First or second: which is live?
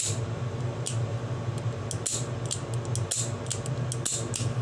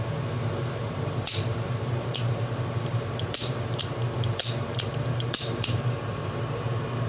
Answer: first